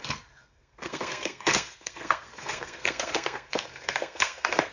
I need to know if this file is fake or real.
fake